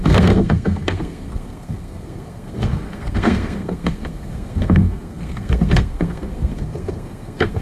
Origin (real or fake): fake